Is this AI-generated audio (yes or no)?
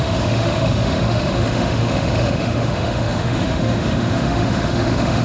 yes